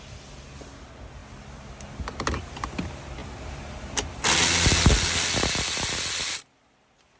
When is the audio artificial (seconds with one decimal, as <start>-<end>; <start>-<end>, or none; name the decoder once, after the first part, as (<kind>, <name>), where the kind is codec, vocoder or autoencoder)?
none